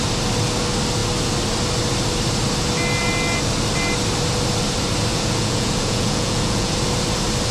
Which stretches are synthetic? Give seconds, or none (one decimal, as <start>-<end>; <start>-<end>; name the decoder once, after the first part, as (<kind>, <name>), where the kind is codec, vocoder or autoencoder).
5.1-6.7 (vocoder, Vocos)